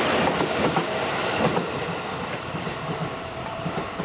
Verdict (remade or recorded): remade